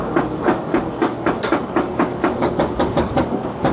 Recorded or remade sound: remade